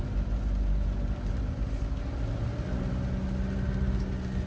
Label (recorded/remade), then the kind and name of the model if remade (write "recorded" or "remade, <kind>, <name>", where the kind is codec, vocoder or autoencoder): recorded